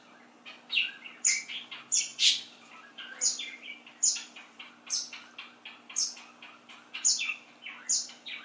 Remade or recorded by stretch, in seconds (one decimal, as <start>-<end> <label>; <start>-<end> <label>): 0.0-2.1 recorded; 2.1-4.7 remade; 4.7-8.4 recorded